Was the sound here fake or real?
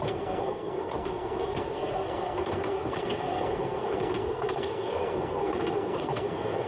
fake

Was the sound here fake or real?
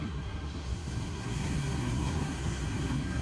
fake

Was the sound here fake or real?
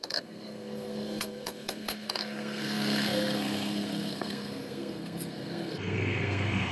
fake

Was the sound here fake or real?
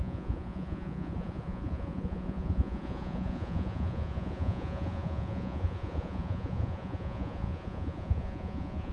fake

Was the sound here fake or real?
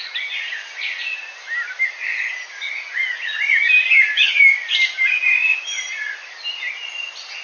real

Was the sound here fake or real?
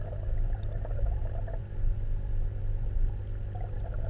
real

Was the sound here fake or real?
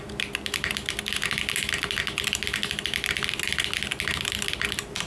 real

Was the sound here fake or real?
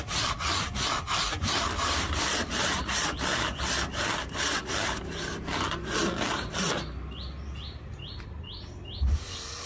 real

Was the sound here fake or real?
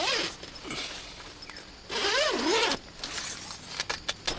real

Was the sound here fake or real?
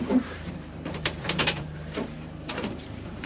fake